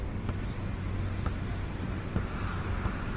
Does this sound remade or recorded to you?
recorded